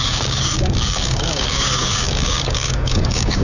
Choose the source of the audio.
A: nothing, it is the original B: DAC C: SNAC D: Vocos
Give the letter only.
B